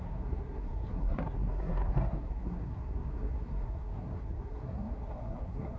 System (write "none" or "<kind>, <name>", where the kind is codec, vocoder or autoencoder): codec, SNAC